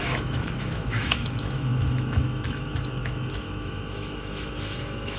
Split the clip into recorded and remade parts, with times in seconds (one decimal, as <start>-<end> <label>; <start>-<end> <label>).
0.0-5.2 remade